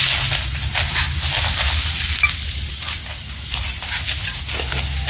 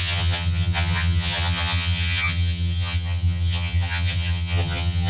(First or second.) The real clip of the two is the first